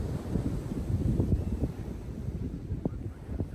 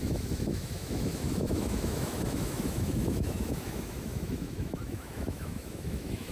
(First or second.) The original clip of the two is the first